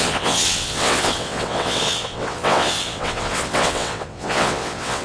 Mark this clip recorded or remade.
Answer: remade